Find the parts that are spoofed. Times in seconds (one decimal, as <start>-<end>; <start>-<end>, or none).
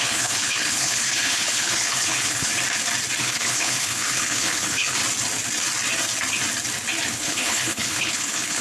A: 0.0-2.5; 3.2-5.0; 7.1-8.6